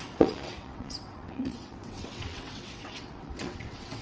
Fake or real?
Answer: fake